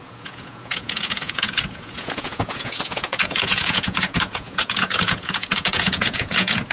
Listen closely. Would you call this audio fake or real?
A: fake